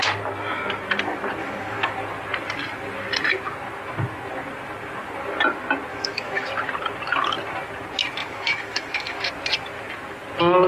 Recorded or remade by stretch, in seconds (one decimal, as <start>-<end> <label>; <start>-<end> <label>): 0.0-1.4 recorded; 1.4-1.9 remade; 1.9-5.9 recorded; 5.9-6.5 remade; 6.5-8.2 recorded; 8.2-9.3 remade; 9.3-10.7 recorded